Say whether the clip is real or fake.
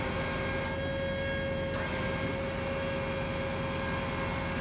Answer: real